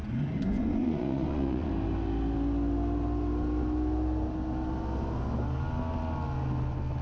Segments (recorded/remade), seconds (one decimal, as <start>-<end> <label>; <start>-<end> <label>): 0.0-1.7 remade; 1.7-7.0 recorded